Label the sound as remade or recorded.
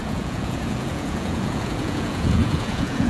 remade